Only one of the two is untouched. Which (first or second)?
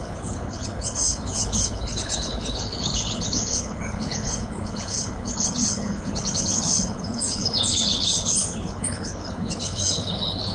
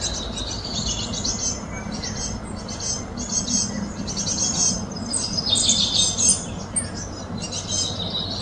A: second